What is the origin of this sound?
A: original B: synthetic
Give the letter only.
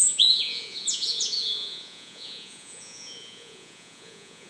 B